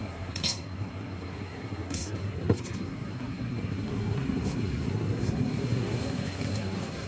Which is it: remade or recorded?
remade